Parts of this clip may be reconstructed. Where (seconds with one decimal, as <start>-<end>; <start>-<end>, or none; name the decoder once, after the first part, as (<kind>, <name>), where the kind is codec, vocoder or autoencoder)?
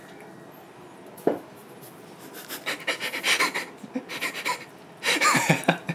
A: none